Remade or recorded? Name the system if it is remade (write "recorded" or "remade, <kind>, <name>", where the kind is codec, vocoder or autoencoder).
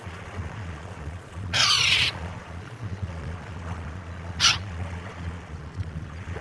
remade, vocoder, Vocos